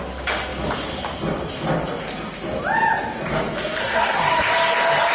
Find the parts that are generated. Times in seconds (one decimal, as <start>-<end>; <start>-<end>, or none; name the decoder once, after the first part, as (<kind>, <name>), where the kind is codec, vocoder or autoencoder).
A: 3.8-4.3 (codec, SNAC)